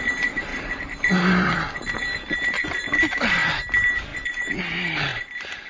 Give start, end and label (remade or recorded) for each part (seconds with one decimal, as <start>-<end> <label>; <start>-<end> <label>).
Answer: 0.0-0.5 recorded; 0.5-3.5 remade; 3.5-4.1 recorded; 4.1-4.6 remade; 4.6-5.7 recorded